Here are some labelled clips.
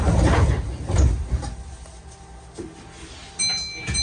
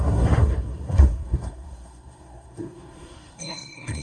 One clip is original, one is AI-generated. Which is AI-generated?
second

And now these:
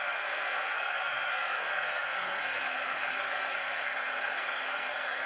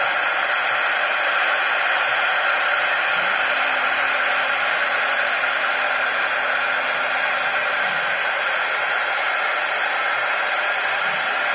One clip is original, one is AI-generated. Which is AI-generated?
first